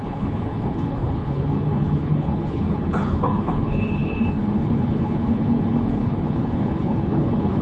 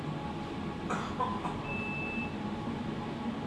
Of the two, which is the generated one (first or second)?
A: first